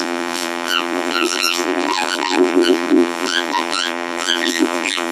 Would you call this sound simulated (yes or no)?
yes